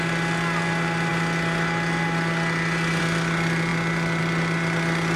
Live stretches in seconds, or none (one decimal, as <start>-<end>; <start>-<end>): 0.0-5.2